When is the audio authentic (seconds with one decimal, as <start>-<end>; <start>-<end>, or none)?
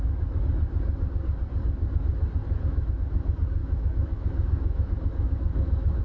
0.0-2.4; 2.9-3.6